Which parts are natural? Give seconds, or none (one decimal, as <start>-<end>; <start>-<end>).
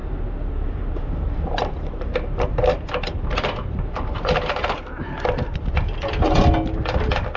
2.1-7.4